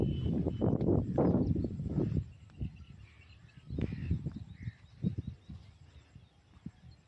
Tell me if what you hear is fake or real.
real